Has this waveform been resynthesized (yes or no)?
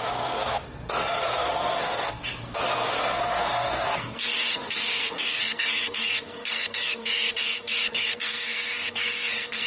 yes